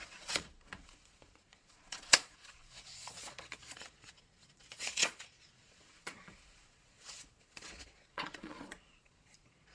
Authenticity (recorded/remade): remade